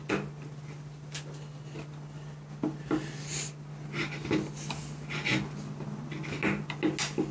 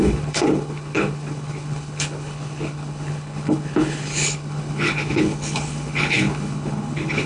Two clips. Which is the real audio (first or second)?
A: first